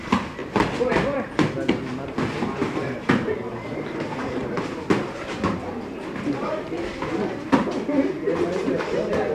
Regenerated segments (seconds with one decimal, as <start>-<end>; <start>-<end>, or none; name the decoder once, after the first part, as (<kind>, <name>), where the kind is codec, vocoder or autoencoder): 4.4-6.5 (vocoder, BigVGAN v2)